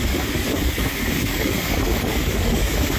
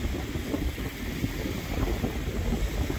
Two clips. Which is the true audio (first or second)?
second